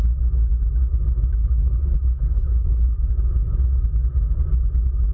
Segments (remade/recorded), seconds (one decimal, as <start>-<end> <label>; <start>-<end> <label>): 0.0-1.4 recorded; 1.4-3.1 remade; 3.1-5.1 recorded